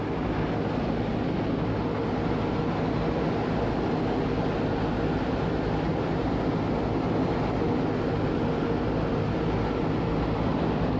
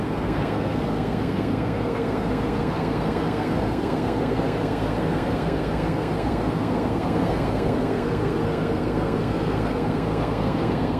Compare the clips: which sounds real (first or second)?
first